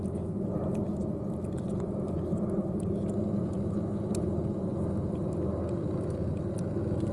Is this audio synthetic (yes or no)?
no